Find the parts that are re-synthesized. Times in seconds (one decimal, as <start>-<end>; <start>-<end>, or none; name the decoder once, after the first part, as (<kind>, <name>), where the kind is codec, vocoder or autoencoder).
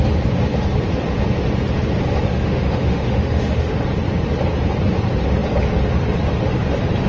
2.3-3.8 (autoencoder, DAC-VAE)